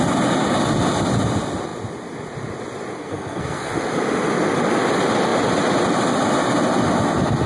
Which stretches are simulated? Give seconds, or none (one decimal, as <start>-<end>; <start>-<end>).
3.0-3.7